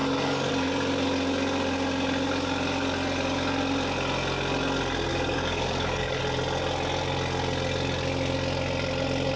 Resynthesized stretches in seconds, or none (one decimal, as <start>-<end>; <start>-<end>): 0.0-0.5; 5.1-6.2